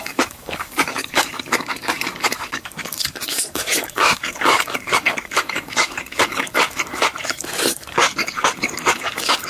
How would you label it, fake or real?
fake